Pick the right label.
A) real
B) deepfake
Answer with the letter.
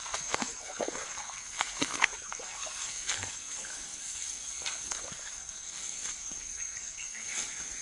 B